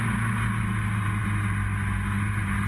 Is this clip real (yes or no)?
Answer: yes